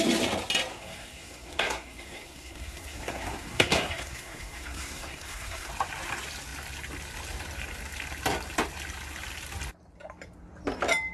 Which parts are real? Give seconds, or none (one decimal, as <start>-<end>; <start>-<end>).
0.0-0.7; 5.7-11.1